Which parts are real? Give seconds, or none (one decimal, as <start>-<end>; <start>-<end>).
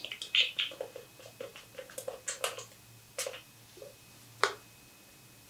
0.0-5.5